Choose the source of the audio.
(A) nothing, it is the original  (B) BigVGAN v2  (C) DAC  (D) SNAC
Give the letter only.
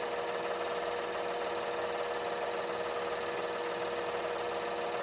A